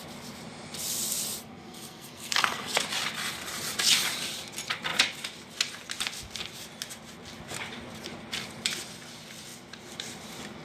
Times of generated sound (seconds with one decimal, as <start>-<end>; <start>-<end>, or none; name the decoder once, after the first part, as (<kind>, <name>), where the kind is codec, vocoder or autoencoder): 1.4-2.8 (codec, SNAC)